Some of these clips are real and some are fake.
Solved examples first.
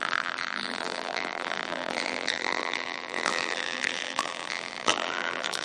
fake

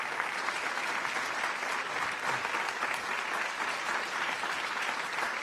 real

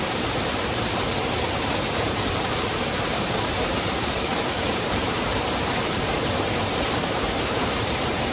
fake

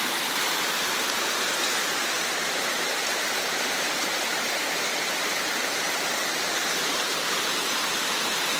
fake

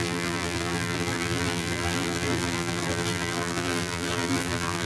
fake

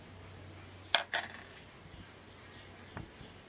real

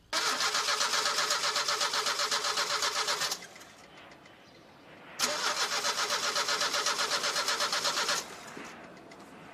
real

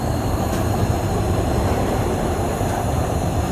fake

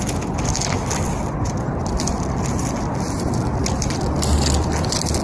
real